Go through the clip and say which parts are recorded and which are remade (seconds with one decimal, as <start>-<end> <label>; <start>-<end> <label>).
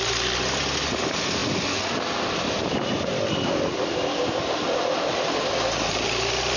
0.0-1.4 recorded; 1.4-5.4 remade; 5.4-6.6 recorded